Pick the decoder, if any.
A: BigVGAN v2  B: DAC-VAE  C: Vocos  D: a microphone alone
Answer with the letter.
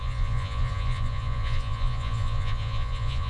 C